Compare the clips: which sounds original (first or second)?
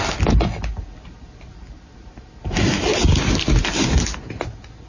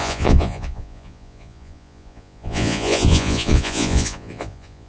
first